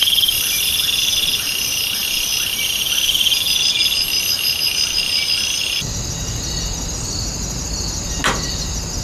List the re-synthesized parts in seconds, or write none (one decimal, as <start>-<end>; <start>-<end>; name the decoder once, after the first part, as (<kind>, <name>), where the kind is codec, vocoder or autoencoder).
none

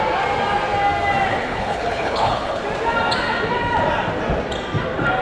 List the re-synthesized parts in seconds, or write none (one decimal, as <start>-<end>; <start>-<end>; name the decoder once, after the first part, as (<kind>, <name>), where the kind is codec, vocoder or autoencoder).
1.3-2.6 (codec, HILCodec)

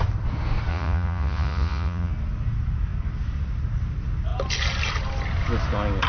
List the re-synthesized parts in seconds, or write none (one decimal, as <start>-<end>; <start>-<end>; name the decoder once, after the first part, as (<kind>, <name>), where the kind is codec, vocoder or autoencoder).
0.7-2.1 (vocoder, Vocos)

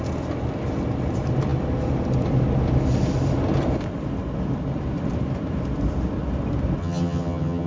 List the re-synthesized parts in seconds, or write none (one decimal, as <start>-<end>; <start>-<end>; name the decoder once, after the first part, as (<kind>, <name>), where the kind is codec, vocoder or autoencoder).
6.8-7.7 (vocoder, HiFi-GAN)

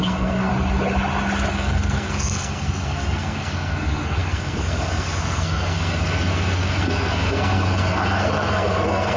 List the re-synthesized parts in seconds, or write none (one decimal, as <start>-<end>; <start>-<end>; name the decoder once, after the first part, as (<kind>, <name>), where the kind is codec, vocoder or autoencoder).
0.0-0.5 (codec, SNAC); 1.5-9.2

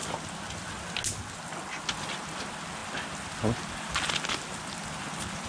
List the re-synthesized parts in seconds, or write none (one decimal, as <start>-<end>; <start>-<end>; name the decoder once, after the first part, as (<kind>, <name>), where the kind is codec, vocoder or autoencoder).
none

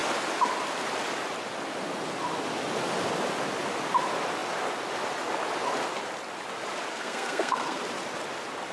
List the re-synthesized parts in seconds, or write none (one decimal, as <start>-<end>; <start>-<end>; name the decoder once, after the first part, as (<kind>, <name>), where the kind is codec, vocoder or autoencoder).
6.9-7.8 (codec, SNAC)